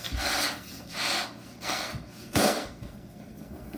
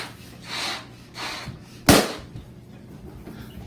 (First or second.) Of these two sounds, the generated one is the first